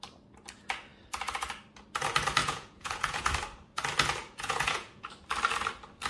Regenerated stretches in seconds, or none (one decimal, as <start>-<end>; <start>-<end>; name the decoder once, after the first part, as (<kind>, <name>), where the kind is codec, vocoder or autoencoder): 2.4-3.3 (vocoder, Vocos); 4.2-5.1